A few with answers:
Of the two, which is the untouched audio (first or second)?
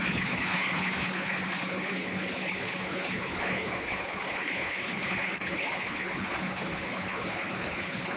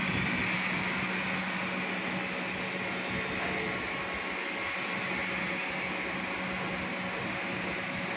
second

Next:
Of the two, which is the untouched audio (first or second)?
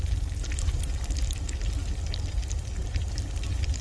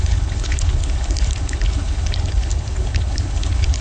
first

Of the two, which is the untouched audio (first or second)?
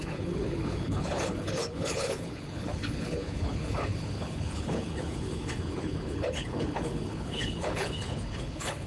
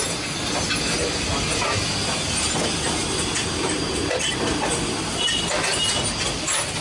second